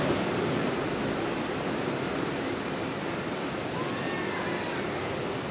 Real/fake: real